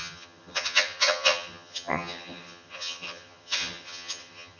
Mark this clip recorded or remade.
remade